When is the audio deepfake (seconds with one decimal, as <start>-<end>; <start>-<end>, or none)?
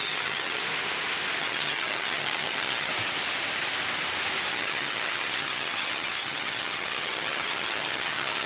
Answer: 0.0-0.6; 1.4-2.9; 4.5-8.5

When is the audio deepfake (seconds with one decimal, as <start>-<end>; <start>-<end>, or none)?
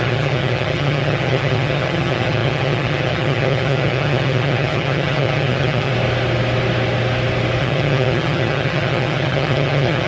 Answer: 0.0-5.9; 7.6-10.1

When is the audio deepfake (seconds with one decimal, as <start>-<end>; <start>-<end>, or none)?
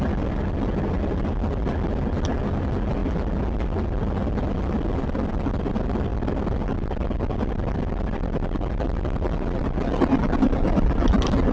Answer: none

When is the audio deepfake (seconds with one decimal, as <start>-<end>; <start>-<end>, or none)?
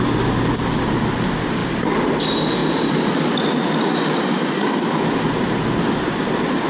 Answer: none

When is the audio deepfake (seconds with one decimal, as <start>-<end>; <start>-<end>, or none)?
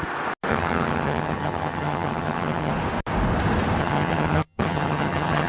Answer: 0.5-2.7; 3.8-5.5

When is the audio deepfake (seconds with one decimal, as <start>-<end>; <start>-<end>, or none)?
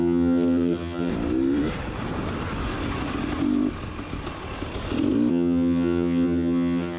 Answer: 0.0-1.1; 5.3-7.0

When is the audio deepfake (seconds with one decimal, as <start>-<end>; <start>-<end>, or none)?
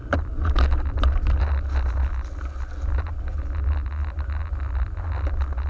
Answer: none